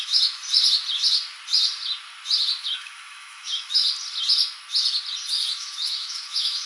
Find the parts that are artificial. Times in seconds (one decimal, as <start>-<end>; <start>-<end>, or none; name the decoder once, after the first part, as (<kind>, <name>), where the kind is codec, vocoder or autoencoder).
0.0-0.4 (autoencoder, DAC-VAE); 2.6-3.8; 5.3-6.7